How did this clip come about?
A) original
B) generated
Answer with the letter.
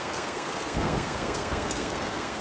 B